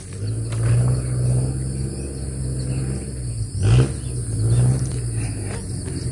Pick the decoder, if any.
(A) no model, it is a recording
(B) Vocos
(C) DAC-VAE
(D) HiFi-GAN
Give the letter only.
A